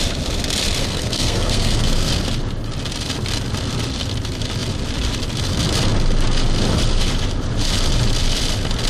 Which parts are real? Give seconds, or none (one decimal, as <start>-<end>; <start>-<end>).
0.0-0.8; 2.1-8.9